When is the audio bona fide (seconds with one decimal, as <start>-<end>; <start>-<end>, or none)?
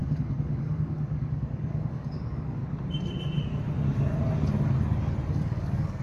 2.6-5.3